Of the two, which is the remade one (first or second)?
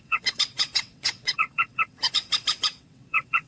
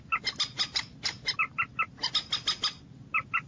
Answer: first